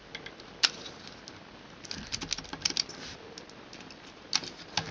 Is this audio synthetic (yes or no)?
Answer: no